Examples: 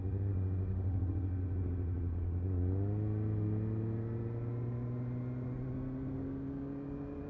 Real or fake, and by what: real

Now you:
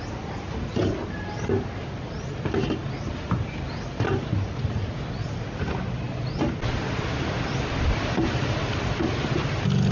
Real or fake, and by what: real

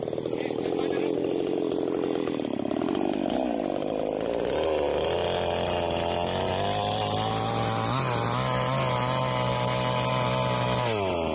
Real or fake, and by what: real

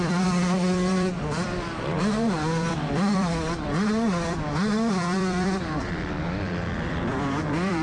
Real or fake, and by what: fake, vocoder, BigVGAN v2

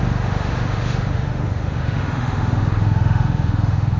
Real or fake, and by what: fake, autoencoder, DAC-VAE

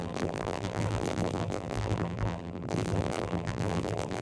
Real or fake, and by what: fake, vocoder, BigVGAN v2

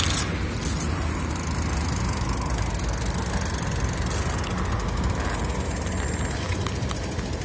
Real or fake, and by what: real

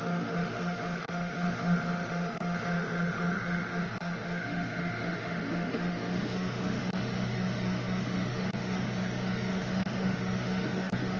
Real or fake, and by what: fake, autoencoder, DAC-VAE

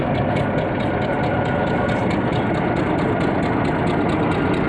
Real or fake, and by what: real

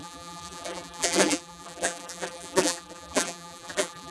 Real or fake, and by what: fake, vocoder, BigVGAN v2